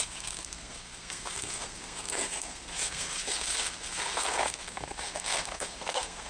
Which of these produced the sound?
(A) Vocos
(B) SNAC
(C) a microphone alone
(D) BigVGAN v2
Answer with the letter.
B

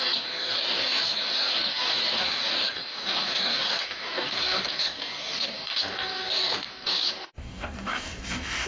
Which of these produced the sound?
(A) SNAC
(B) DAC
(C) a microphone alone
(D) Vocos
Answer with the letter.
B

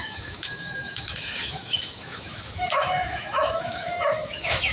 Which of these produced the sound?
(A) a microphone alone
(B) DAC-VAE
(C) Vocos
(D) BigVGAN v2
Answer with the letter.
B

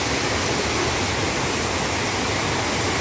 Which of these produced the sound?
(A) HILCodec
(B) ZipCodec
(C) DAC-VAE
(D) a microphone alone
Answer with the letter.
D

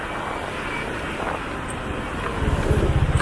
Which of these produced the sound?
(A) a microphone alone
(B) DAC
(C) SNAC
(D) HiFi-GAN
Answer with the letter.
A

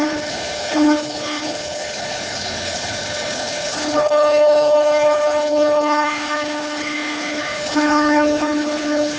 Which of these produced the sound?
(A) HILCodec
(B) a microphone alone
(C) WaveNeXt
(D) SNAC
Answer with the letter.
A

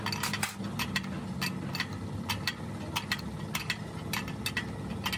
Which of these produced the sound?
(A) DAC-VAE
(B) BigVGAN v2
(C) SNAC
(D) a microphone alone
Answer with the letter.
D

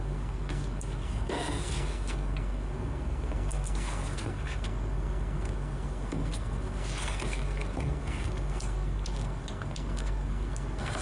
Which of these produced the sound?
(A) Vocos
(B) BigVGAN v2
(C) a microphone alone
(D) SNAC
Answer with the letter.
D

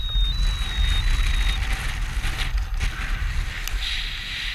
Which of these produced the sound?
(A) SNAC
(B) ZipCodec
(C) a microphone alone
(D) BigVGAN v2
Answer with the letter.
C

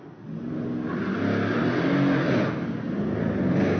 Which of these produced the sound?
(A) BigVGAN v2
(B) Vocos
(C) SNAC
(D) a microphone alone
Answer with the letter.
D